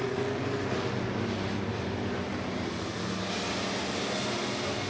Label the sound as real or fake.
real